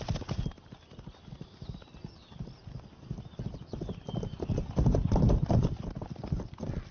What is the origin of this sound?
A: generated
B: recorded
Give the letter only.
A